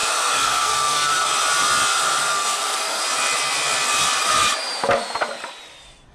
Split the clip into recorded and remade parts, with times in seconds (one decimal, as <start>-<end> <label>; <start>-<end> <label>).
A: 0.0-1.3 remade; 1.3-2.2 recorded; 2.2-3.0 remade; 3.0-6.1 recorded